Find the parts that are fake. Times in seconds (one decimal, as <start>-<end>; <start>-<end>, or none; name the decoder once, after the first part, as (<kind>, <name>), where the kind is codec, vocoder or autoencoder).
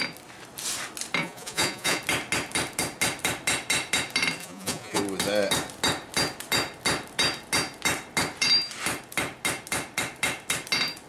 1.2-2.0 (vocoder, Vocos); 4.4-5.0